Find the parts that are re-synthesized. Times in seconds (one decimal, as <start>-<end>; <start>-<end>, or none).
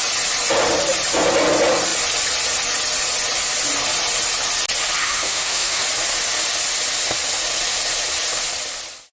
5.0-5.8